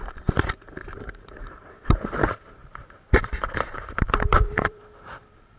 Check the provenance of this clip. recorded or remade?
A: remade